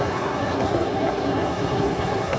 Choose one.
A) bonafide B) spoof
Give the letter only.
B